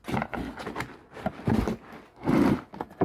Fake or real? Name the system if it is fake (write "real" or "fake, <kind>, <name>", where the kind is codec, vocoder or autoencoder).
real